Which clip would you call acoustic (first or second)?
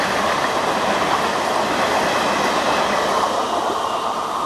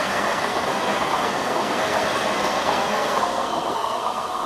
first